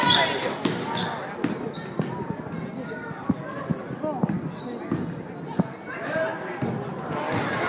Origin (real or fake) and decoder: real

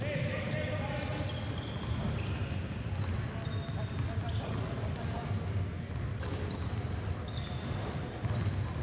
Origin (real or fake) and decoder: real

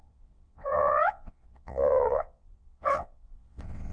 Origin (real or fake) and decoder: fake, vocoder, WaveNeXt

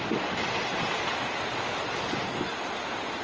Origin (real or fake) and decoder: real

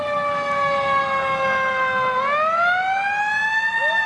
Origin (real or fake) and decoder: real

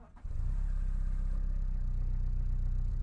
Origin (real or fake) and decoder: real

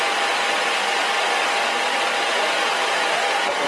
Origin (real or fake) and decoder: real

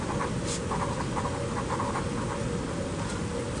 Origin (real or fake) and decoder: real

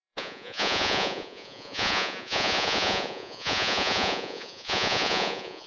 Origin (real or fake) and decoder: fake, vocoder, Vocos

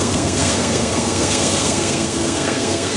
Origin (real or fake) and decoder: fake, codec, SNAC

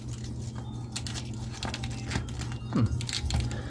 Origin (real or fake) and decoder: real